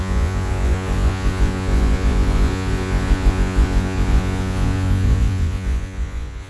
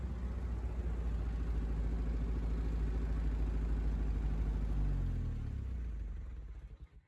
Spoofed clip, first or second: first